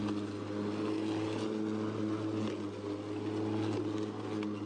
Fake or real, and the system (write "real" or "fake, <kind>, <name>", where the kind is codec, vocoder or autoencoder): real